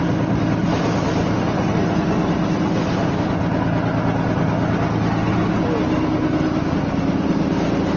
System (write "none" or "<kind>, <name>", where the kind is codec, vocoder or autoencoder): none